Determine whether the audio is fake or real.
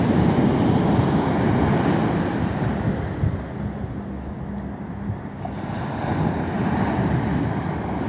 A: real